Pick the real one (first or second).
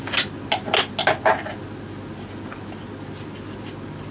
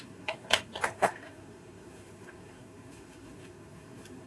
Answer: first